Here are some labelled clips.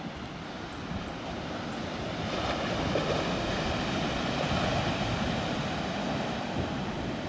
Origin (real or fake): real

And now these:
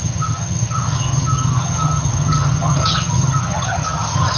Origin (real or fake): fake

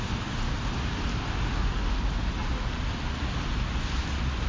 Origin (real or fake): real